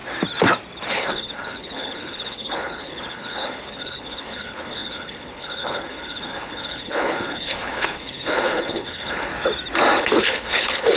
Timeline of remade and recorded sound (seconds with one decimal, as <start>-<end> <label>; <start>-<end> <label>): 0.0-0.9 recorded; 0.9-9.3 remade; 9.3-10.0 recorded; 10.0-11.0 remade